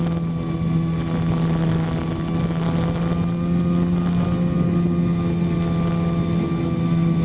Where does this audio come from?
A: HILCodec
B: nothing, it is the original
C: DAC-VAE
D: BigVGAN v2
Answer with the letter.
B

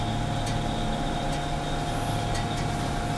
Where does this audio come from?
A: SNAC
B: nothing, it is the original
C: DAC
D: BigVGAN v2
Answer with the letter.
B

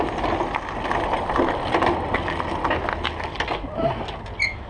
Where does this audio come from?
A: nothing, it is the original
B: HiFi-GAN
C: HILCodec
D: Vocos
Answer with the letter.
A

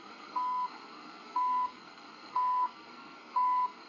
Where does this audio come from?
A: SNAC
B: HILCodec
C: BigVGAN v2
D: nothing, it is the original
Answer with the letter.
A